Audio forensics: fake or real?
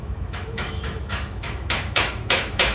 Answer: fake